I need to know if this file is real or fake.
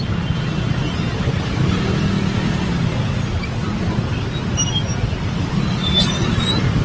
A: real